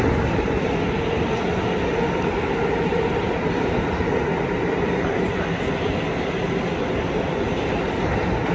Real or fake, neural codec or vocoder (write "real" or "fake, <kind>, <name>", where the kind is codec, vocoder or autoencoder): real